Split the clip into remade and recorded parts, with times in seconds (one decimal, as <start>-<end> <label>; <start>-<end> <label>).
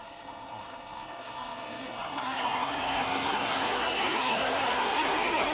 0.0-5.5 remade